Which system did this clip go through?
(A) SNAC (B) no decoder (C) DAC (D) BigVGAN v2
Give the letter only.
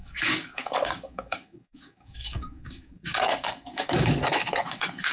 C